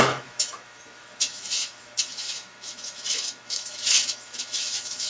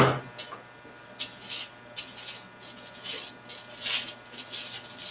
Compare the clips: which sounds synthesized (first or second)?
first